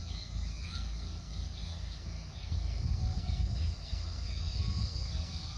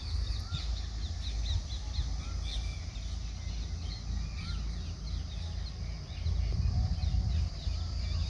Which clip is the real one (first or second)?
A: second